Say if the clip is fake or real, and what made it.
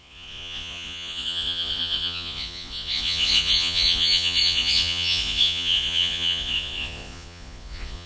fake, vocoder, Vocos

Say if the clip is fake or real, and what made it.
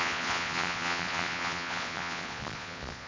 fake, vocoder, Vocos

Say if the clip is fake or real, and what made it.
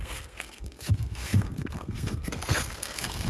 fake, codec, SNAC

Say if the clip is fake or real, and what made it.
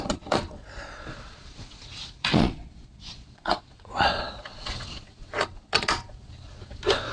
fake, vocoder, Vocos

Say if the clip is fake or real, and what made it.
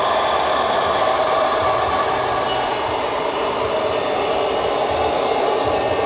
real